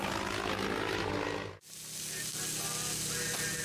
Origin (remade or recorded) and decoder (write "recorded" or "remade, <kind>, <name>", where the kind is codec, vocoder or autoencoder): recorded